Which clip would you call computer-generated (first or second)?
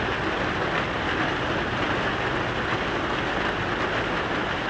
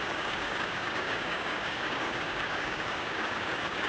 second